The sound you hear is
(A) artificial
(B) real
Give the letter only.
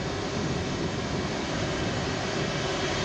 B